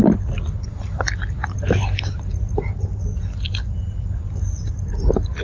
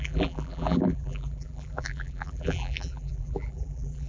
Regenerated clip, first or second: second